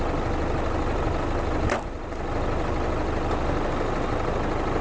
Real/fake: real